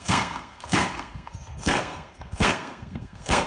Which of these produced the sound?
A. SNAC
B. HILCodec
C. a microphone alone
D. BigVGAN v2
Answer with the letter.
A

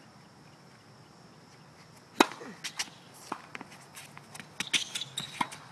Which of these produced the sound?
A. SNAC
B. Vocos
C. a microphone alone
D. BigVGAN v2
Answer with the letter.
C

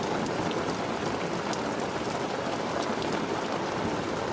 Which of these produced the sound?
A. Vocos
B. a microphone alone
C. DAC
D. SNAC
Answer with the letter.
B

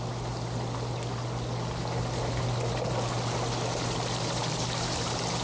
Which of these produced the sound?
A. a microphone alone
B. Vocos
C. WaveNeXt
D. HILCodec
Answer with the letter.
A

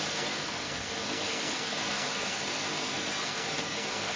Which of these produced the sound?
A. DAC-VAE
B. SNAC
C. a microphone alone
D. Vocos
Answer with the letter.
B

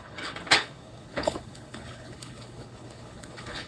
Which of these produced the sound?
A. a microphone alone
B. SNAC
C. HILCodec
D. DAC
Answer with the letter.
C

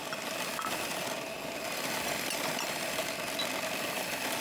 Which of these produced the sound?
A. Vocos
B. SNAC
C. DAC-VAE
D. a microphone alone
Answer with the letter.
D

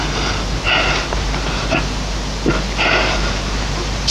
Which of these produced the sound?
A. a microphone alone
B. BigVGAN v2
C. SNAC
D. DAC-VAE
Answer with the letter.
B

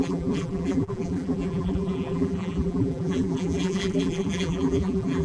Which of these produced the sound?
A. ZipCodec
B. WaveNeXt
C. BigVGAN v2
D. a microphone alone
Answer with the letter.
C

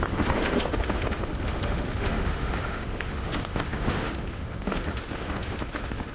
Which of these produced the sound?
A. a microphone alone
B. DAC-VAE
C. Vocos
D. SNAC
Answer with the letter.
B